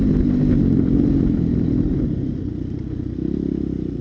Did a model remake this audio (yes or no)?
no